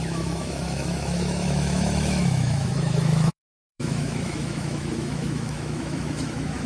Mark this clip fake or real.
fake